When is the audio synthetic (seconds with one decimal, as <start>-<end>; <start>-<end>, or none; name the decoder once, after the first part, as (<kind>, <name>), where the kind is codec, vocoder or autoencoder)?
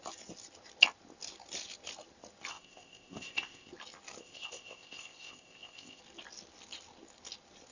2.5-3.7 (codec, ZipCodec); 4.2-6.0